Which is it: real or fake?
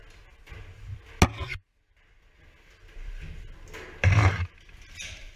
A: real